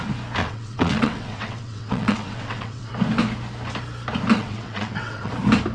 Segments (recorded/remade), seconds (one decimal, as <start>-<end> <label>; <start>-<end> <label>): 0.0-0.4 recorded; 0.4-2.9 remade; 2.9-4.3 recorded; 4.3-5.3 remade; 5.3-5.7 recorded